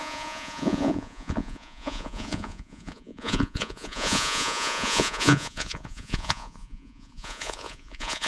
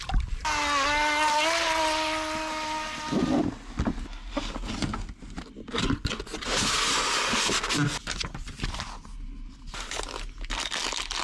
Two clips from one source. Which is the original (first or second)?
second